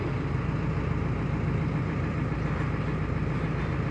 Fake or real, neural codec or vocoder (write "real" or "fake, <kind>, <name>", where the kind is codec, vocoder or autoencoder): real